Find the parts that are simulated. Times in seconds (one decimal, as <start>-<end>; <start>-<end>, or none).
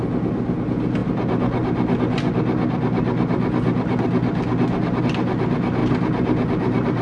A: none